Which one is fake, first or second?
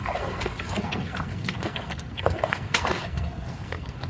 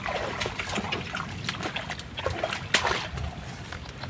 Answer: first